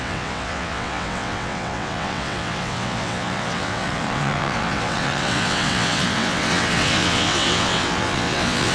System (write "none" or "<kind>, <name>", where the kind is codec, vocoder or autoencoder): vocoder, WaveNeXt